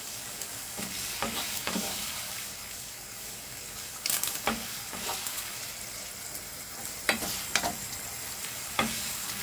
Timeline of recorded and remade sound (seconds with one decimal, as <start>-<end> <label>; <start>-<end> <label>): 0.0-5.6 remade; 5.6-8.5 recorded; 8.5-9.4 remade